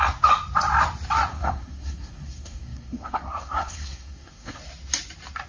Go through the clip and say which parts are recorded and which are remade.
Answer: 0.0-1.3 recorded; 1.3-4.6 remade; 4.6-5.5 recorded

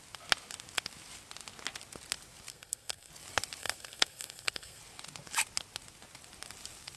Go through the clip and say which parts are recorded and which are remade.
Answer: 0.0-2.5 recorded; 2.5-3.1 remade; 3.1-3.6 recorded; 3.6-4.8 remade; 4.8-7.0 recorded